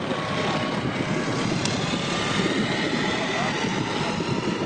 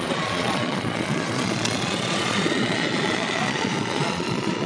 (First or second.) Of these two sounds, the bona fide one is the first